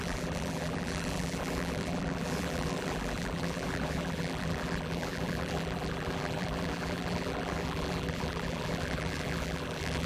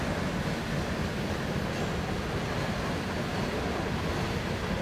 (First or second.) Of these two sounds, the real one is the second